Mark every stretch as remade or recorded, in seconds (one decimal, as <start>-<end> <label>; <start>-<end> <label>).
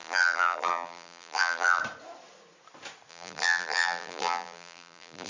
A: 0.0-1.8 remade; 1.8-3.1 recorded; 3.1-5.3 remade